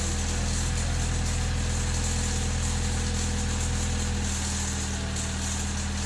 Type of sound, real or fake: real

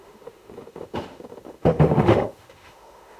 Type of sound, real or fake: fake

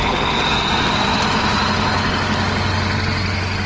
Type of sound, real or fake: real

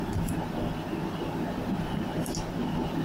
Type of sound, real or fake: real